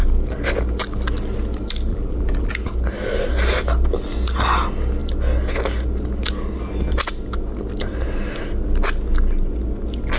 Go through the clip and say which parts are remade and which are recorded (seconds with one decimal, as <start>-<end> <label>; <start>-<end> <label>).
0.0-1.9 recorded; 1.9-2.5 remade; 2.5-10.2 recorded